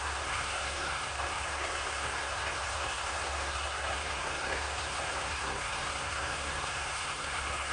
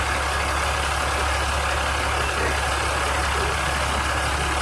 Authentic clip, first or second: second